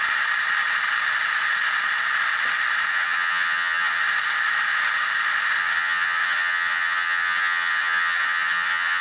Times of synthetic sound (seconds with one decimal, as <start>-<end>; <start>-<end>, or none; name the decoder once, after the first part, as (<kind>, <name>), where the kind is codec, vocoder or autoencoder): 2.9-4.0 (vocoder, HiFi-GAN); 5.6-9.0

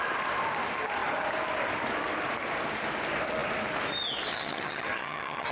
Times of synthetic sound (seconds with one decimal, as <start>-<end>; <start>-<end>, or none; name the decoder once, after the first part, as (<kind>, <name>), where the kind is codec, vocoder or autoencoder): 4.3-5.5 (vocoder, HiFi-GAN)

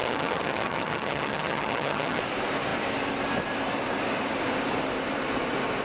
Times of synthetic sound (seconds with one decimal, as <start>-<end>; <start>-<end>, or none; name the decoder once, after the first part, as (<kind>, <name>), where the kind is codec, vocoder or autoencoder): 0.0-2.2 (vocoder, HiFi-GAN)

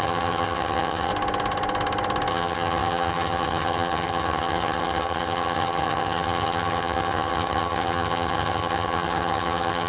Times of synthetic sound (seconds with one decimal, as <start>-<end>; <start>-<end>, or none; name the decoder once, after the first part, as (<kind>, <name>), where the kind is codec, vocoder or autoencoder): 0.0-1.1 (vocoder, HiFi-GAN); 2.3-9.9

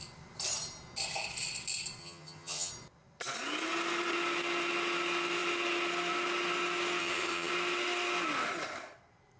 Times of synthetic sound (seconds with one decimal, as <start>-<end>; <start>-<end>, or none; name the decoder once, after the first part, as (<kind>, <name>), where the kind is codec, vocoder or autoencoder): 2.0-2.7 (vocoder, HiFi-GAN); 7.0-7.5

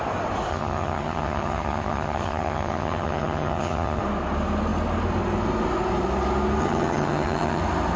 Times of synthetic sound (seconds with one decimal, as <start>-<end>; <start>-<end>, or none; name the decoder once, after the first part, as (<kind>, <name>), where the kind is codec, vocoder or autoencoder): 0.5-4.0 (vocoder, HiFi-GAN); 6.6-7.6